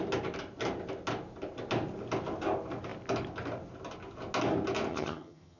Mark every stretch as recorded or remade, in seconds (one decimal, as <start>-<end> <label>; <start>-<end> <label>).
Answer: 0.0-4.9 recorded; 4.9-5.6 remade